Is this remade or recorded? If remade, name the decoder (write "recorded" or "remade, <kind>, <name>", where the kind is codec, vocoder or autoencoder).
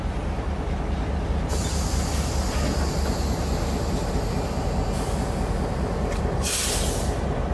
recorded